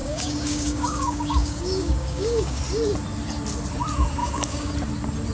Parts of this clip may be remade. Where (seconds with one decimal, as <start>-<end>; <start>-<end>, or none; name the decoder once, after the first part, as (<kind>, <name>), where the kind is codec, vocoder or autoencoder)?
0.0-2.6 (codec, DAC); 4.2-4.7